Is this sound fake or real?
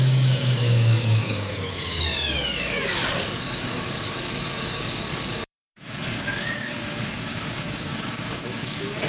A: fake